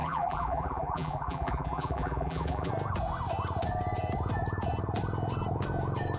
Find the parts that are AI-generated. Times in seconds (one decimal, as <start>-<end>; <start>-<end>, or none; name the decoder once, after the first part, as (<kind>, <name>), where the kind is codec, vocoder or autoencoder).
0.0-2.7 (vocoder, BigVGAN v2)